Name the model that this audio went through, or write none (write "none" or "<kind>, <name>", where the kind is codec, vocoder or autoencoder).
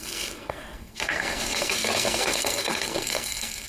codec, SNAC